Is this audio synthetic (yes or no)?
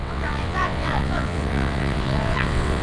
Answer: yes